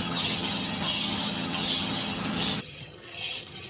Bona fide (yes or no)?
no